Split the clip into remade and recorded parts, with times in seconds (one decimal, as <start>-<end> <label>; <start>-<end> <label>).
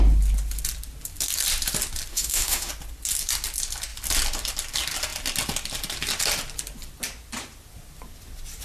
0.0-2.1 recorded; 2.1-2.7 remade; 2.7-8.6 recorded